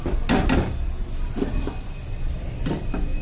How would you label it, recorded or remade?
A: recorded